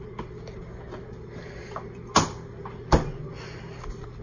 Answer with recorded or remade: recorded